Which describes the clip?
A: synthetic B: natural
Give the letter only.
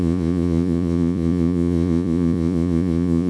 A